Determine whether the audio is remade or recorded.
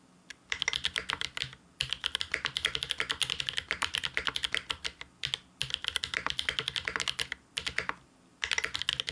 recorded